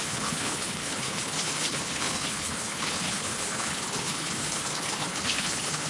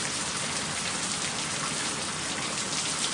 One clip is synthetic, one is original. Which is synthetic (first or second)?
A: first